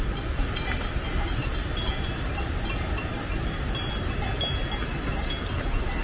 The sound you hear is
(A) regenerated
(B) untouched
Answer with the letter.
B